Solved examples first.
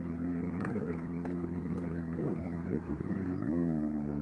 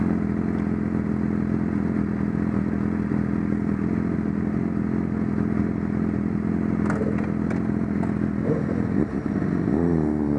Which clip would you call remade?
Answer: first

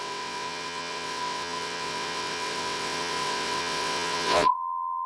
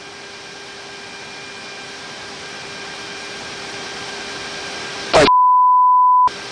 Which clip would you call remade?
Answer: first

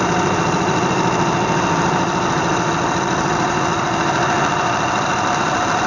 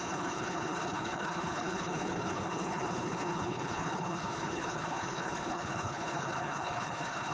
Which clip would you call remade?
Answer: second